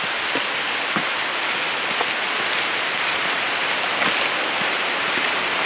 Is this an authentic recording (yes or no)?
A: yes